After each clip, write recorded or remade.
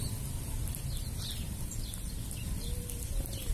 recorded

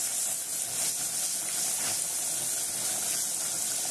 recorded